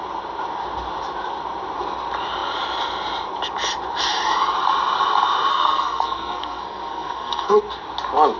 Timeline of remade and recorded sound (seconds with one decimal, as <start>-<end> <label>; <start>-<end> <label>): 0.0-5.5 recorded; 5.5-7.6 remade; 7.6-8.4 recorded